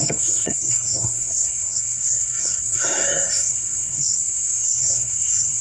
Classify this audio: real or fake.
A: fake